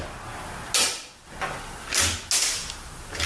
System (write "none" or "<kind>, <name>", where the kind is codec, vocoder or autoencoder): none